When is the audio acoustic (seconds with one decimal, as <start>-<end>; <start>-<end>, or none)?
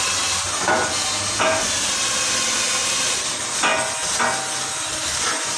0.0-2.8; 3.3-5.6